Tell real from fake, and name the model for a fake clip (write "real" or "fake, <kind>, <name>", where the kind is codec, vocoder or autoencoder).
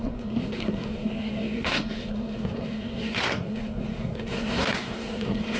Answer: fake, codec, SNAC